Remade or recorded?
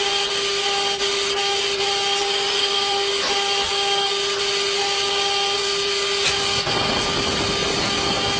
recorded